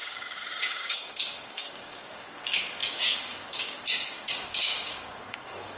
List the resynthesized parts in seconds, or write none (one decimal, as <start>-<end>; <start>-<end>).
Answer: 0.0-5.8